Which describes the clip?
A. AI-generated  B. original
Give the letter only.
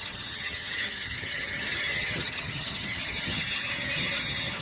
A